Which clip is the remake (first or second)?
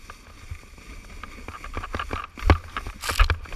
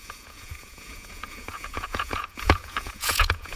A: second